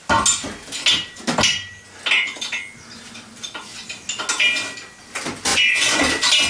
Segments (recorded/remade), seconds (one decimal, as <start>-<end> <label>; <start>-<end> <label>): 0.0-5.5 recorded; 5.5-6.0 remade; 6.0-6.5 recorded